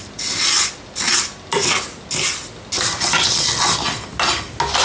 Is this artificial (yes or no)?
no